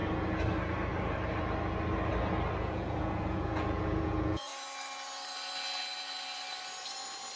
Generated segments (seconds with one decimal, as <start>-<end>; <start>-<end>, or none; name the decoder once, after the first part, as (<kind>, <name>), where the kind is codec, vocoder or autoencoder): 2.6-4.5 (vocoder, Vocos)